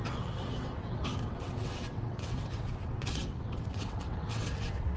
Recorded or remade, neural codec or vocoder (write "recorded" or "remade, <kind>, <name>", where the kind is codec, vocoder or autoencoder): remade, vocoder, WaveNeXt